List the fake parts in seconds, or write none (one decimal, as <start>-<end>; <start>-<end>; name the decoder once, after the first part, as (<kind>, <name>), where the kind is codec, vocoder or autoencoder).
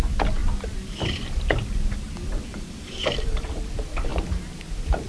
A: 2.5-3.5 (vocoder, BigVGAN v2)